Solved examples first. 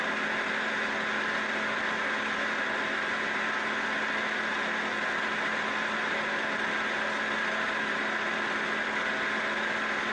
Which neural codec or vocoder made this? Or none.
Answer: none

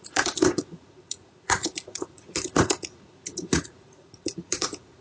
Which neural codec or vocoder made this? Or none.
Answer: vocoder, Vocos